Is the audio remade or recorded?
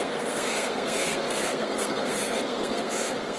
remade